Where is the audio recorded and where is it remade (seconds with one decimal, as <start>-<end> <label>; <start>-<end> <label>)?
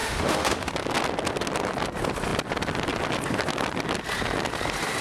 0.0-0.7 remade; 0.7-5.0 recorded